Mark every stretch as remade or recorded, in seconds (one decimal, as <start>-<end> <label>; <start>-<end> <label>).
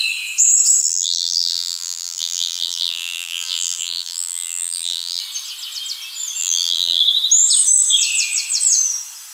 0.0-0.8 recorded; 0.8-5.2 remade; 5.2-6.4 recorded; 6.4-7.0 remade; 7.0-9.3 recorded